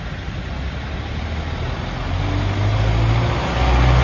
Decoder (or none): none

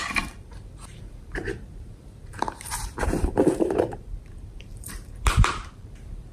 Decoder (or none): vocoder, BigVGAN v2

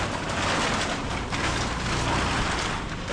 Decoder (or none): none